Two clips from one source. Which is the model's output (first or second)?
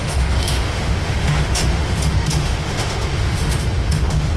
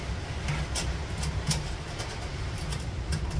first